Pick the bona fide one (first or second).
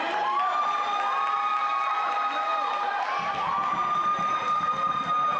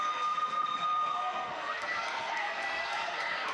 first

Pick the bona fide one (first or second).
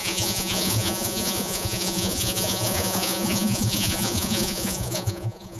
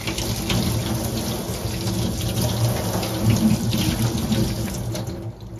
second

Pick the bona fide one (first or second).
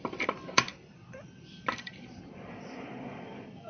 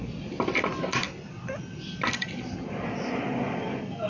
second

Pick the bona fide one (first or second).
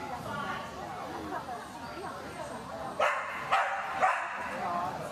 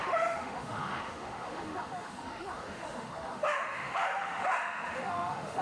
first